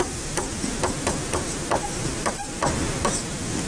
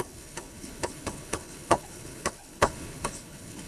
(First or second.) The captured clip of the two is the first